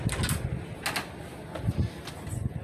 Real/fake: real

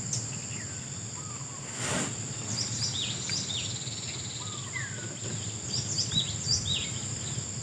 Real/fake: real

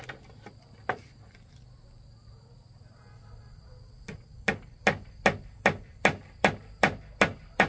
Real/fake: real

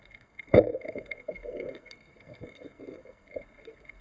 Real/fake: fake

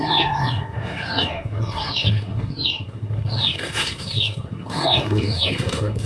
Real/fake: fake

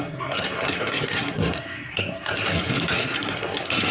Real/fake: fake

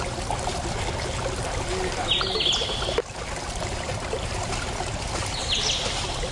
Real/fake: real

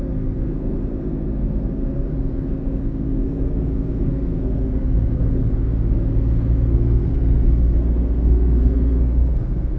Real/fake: fake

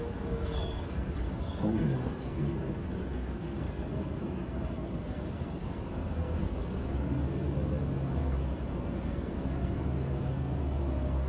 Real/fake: fake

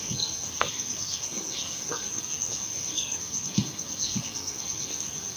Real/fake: fake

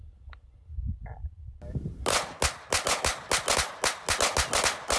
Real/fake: real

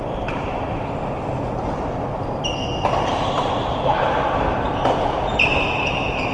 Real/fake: real